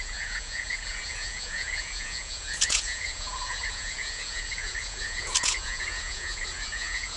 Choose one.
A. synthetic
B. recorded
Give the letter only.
A